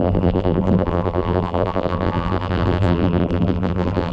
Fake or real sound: fake